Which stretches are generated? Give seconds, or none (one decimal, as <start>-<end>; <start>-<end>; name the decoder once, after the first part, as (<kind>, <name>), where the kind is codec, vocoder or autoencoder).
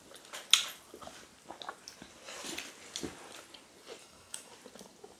4.0-4.5 (autoencoder, DAC-VAE)